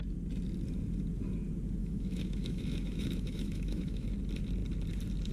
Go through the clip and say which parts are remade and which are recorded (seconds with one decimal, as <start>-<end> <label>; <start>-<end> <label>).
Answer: 0.0-1.8 recorded; 1.8-4.1 remade; 4.1-5.3 recorded